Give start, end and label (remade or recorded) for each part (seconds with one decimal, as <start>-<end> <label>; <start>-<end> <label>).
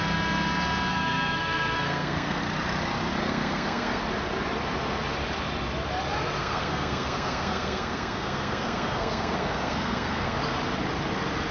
0.0-0.9 recorded; 0.9-2.4 remade; 2.4-3.2 recorded; 3.2-4.0 remade; 4.0-6.4 recorded; 6.4-10.4 remade; 10.4-11.5 recorded